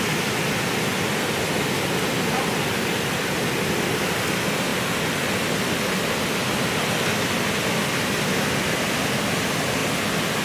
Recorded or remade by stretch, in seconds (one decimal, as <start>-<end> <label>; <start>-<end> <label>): 0.0-10.4 recorded